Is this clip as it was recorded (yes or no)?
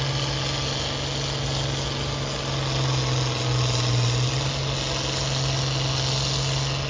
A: yes